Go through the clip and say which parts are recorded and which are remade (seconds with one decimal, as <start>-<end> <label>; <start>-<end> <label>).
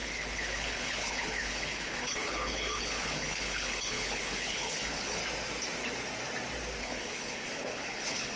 0.0-5.2 remade; 5.2-6.8 recorded; 6.8-8.4 remade